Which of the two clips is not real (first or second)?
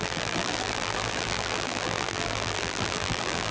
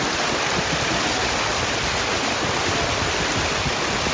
first